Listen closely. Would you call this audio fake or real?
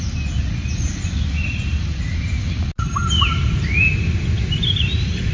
real